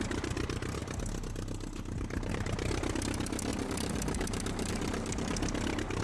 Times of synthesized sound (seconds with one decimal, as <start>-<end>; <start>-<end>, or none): none